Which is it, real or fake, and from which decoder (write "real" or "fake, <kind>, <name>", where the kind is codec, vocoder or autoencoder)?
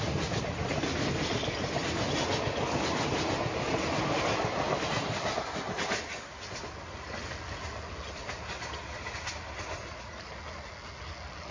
real